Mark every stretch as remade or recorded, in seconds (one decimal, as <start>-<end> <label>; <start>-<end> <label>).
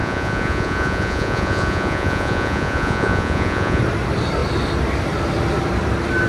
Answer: 0.0-3.8 remade; 3.8-6.3 recorded